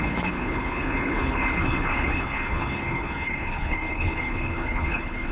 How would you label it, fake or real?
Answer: fake